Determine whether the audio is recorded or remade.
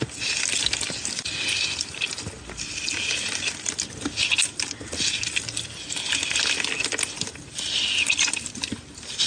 recorded